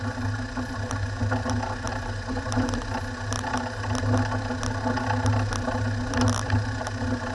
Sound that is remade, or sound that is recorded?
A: recorded